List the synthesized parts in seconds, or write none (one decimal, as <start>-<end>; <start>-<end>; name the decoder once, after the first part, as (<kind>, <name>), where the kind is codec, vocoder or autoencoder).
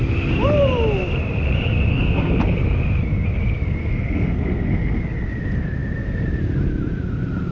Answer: 1.9-2.4 (codec, SNAC); 3.8-5.0